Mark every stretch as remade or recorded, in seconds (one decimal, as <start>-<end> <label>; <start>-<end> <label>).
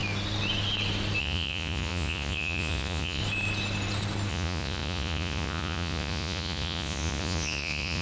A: 0.0-1.2 recorded; 1.2-3.2 remade; 3.2-4.3 recorded; 4.3-8.0 remade